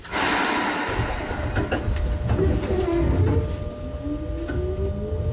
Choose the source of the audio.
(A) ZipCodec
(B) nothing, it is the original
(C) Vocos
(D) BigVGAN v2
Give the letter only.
B